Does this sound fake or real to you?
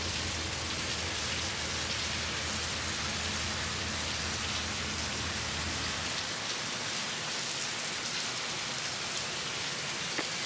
real